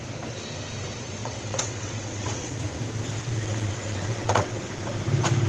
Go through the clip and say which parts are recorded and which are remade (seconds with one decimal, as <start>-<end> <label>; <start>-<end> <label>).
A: 0.0-1.2 recorded; 1.2-2.8 remade; 2.8-3.2 recorded; 3.2-4.6 remade; 4.6-5.5 recorded

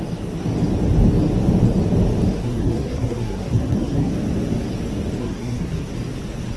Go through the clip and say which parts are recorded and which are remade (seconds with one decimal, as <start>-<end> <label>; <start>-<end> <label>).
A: 0.0-2.4 recorded; 2.4-4.1 remade; 4.1-5.2 recorded; 5.2-5.9 remade; 5.9-6.6 recorded

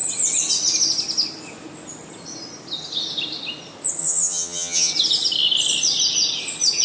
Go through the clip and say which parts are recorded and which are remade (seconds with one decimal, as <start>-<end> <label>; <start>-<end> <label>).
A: 0.0-4.0 recorded; 4.0-4.9 remade; 4.9-6.8 recorded